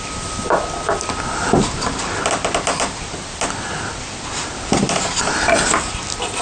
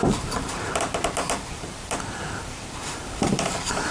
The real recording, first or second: first